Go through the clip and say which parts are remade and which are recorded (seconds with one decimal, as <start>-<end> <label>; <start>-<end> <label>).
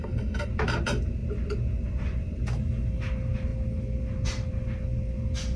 0.0-0.5 remade; 0.5-5.6 recorded